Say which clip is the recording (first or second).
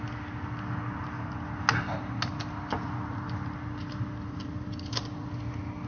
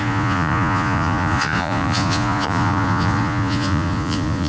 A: first